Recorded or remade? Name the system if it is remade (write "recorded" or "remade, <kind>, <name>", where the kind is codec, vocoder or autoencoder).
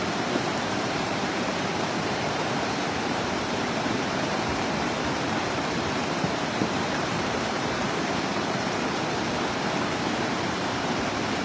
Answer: remade, vocoder, BigVGAN v2